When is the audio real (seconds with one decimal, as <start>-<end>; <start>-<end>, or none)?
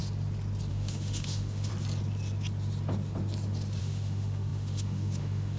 0.0-0.7; 1.7-3.8